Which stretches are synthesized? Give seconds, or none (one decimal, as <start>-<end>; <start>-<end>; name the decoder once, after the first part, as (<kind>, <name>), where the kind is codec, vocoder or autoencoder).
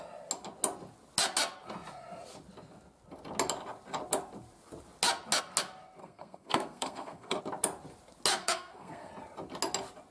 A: 6.0-7.4 (codec, SNAC); 8.4-9.1